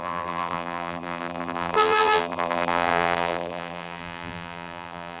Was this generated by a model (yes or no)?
yes